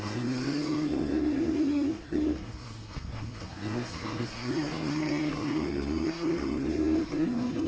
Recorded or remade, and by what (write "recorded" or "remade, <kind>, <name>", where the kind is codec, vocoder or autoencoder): remade, codec, SNAC